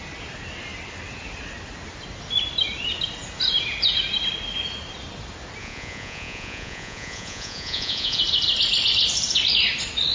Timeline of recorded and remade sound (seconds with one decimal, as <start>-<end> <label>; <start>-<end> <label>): 0.0-5.6 recorded; 5.6-8.2 remade; 8.2-10.1 recorded